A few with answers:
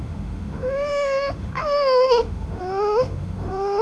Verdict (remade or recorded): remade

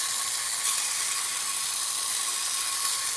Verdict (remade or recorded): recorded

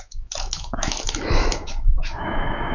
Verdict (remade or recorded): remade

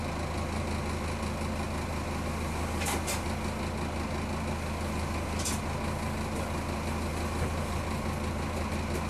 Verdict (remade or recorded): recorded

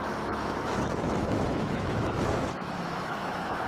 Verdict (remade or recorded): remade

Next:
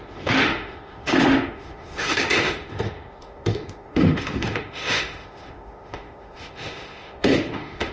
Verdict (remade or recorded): remade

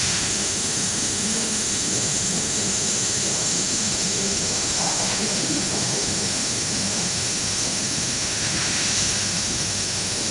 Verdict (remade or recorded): remade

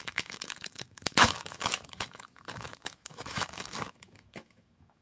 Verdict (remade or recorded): remade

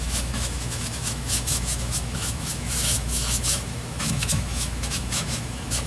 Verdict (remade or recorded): remade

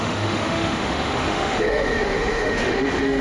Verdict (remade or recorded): remade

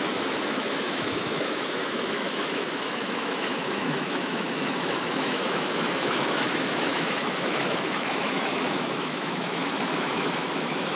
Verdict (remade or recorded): remade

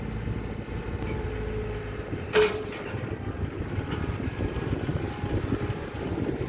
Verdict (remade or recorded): recorded